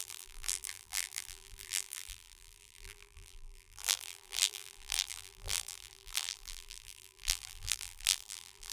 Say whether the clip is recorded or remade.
remade